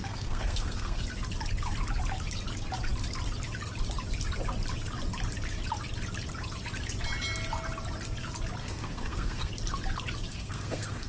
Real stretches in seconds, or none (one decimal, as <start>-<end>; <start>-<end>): 1.0-8.6; 9.5-10.3